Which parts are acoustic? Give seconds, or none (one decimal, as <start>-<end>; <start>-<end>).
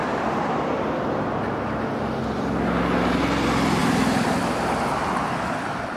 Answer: 0.0-3.8; 4.4-6.0